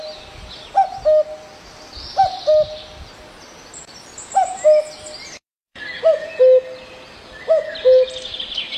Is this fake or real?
real